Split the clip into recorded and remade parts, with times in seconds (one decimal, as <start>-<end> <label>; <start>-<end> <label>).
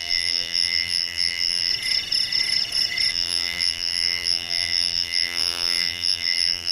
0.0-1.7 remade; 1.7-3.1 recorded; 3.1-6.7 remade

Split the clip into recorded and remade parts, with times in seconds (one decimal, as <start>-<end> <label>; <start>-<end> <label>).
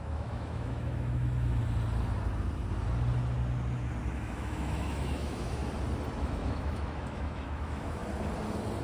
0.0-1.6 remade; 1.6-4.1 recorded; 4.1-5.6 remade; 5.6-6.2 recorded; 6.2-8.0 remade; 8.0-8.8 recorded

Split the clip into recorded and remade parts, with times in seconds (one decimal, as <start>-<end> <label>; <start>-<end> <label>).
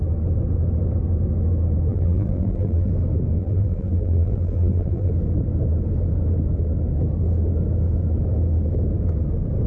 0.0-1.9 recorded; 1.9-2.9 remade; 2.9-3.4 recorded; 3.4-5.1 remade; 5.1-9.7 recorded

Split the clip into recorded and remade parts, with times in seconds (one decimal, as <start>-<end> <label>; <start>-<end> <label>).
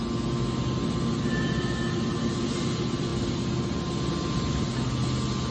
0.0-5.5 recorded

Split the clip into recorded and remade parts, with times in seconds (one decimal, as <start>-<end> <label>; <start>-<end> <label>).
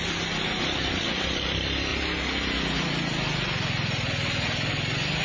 0.0-5.2 recorded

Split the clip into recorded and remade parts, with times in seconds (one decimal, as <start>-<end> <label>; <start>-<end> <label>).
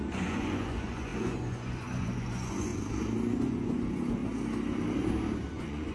0.0-2.7 remade; 2.7-3.4 recorded; 3.4-4.2 remade; 4.2-5.5 recorded; 5.5-5.9 remade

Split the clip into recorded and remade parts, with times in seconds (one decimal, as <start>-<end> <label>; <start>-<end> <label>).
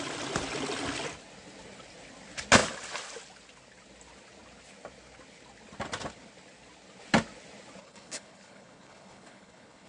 0.0-7.8 recorded; 7.8-9.9 remade